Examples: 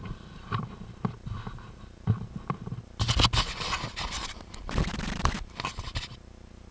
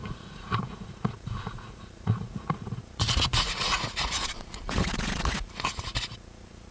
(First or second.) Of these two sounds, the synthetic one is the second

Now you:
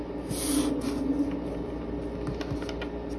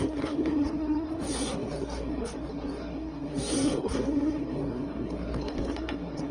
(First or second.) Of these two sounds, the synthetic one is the second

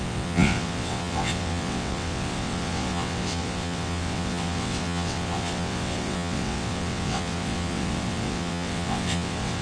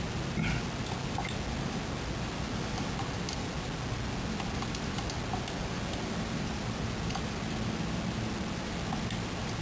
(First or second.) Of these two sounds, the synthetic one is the first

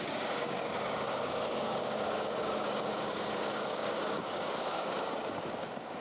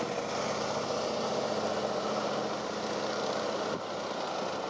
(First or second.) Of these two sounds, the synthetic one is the first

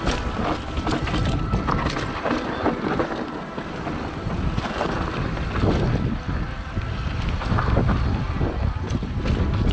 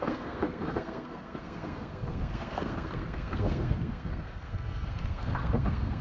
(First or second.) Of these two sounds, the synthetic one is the second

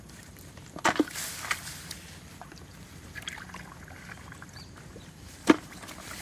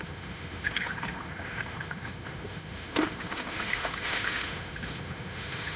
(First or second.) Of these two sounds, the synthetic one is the second